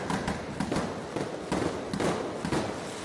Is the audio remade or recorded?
recorded